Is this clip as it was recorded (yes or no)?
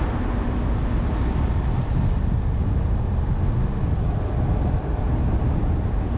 yes